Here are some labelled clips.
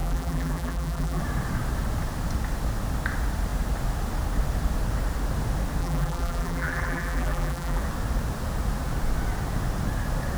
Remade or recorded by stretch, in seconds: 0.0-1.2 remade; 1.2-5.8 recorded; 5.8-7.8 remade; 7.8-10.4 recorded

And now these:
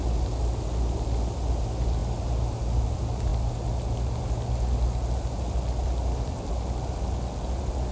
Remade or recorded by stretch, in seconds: 0.0-7.9 recorded

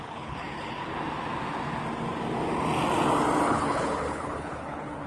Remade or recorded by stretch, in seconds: 0.0-0.9 remade; 0.9-3.5 recorded; 3.5-5.1 remade

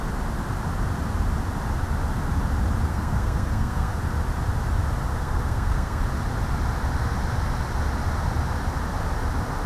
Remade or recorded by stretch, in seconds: 0.0-2.9 recorded; 2.9-4.0 remade; 4.0-5.1 recorded; 5.1-6.0 remade; 6.0-9.7 recorded

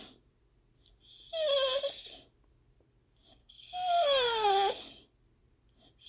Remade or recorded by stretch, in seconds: 0.0-3.4 recorded; 3.4-4.5 remade; 4.5-6.1 recorded

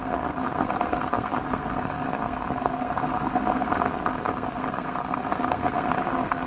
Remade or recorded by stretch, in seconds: 0.0-6.5 remade

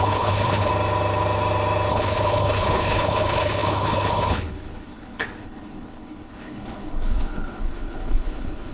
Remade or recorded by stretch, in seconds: 0.0-0.7 remade; 0.7-1.9 recorded; 1.9-8.7 remade